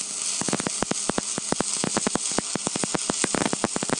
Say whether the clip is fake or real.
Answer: real